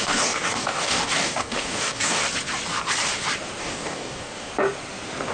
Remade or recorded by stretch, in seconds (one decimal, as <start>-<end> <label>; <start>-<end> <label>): 0.0-2.2 remade; 2.2-3.6 recorded; 3.6-4.5 remade; 4.5-5.3 recorded